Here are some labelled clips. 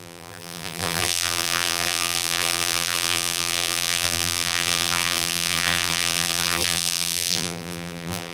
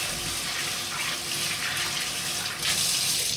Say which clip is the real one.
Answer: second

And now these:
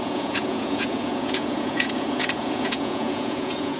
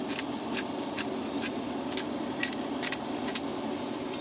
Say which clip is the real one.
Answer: second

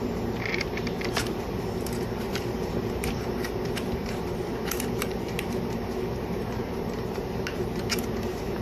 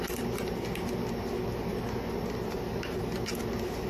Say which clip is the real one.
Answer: second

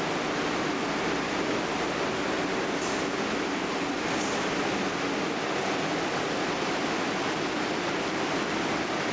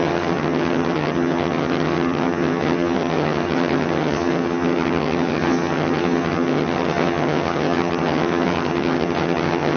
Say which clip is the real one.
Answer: first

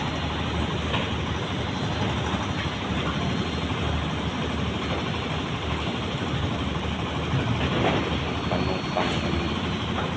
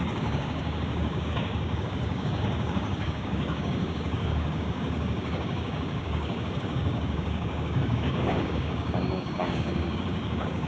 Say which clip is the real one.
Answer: first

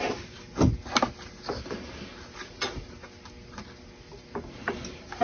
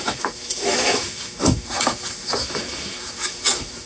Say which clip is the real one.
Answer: first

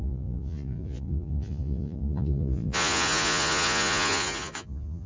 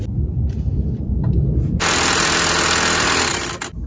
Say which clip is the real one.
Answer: second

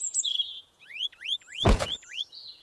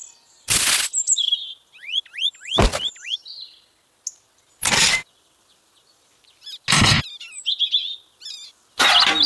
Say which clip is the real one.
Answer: second